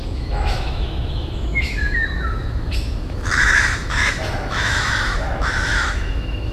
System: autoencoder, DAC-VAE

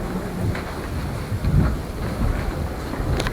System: none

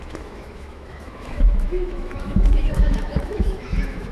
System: autoencoder, DAC-VAE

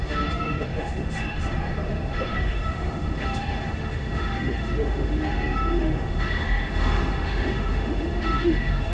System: autoencoder, DAC-VAE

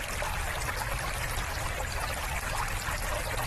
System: none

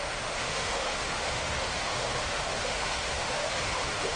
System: autoencoder, DAC-VAE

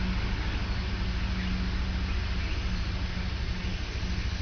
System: none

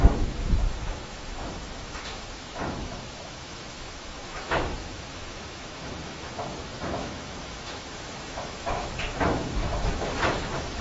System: autoencoder, DAC-VAE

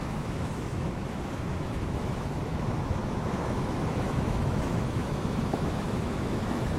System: autoencoder, DAC-VAE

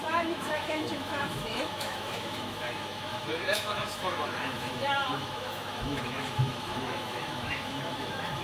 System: autoencoder, DAC-VAE